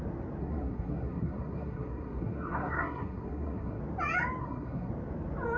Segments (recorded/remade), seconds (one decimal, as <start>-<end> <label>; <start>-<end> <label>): 0.0-0.4 recorded; 0.4-3.8 remade; 3.8-4.4 recorded; 4.4-4.9 remade; 4.9-5.6 recorded